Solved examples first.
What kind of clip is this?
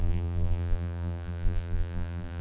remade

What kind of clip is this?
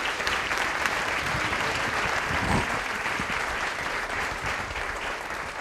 remade